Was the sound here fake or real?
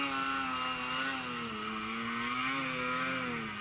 real